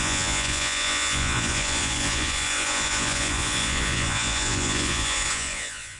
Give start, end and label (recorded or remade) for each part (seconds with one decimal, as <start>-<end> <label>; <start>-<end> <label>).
0.0-6.0 remade